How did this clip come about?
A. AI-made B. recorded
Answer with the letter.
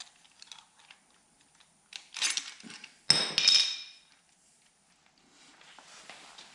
B